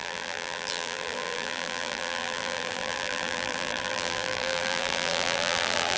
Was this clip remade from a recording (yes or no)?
yes